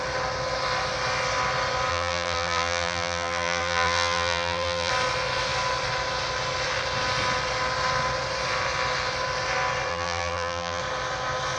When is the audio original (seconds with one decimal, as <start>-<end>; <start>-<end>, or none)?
0.0-1.9; 4.9-9.9; 10.8-11.6